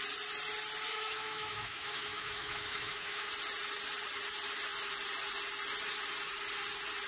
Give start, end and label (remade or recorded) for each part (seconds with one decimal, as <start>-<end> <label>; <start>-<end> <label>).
0.0-0.9 recorded; 0.9-3.3 remade; 3.3-7.1 recorded